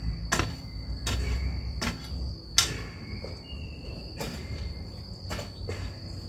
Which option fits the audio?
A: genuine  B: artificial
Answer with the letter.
A